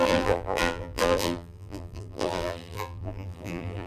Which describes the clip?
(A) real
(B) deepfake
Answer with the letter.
B